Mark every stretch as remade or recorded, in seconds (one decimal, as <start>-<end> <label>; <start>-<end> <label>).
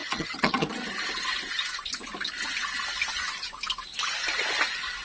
0.0-0.7 remade; 0.7-5.0 recorded